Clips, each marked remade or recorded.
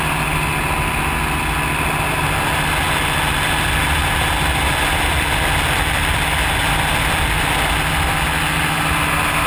recorded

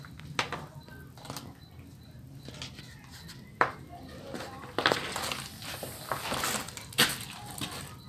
recorded